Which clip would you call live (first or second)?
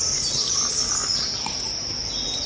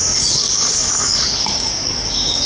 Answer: first